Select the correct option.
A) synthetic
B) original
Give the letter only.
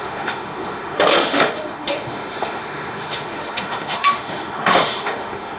A